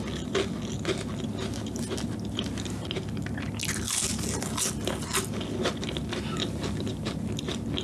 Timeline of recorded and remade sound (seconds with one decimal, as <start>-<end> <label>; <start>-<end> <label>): 0.0-7.8 recorded